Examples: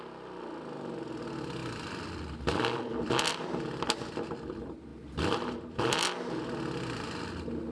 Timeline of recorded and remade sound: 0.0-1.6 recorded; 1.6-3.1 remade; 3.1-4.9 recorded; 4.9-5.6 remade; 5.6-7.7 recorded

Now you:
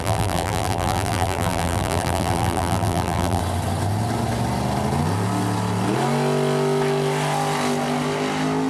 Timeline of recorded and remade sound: 0.0-3.4 remade; 3.4-8.7 recorded

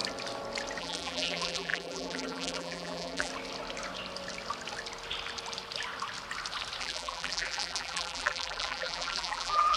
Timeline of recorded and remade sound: 0.0-0.8 recorded; 0.8-3.3 remade; 3.3-6.8 recorded; 6.8-9.8 remade

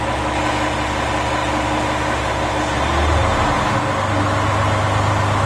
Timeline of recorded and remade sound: 0.0-5.5 recorded